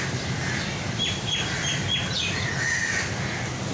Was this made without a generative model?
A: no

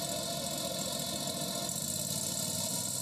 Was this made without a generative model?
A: yes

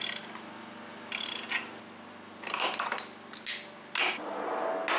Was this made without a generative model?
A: yes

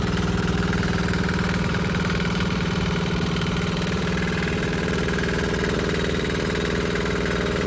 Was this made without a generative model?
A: no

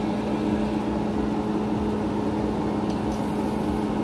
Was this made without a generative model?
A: yes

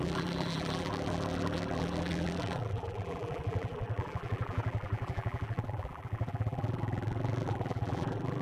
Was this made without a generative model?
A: no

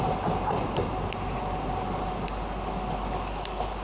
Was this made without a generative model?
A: yes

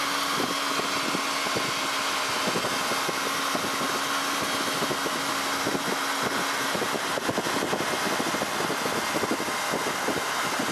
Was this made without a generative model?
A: yes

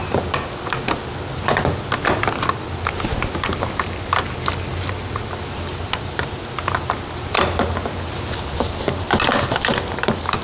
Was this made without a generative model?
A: yes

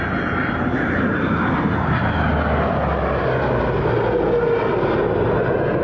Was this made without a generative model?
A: yes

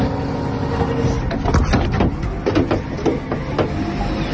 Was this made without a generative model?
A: yes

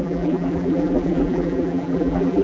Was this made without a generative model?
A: no